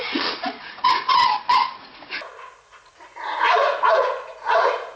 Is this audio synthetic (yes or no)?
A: yes